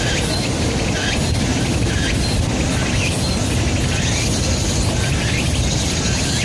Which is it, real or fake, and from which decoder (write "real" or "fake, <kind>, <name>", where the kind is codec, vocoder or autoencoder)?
real